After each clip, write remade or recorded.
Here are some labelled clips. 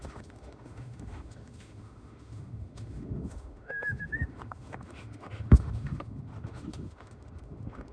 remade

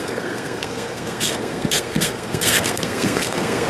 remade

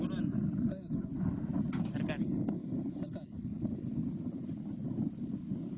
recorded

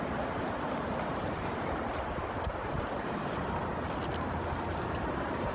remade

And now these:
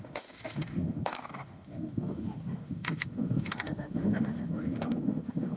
remade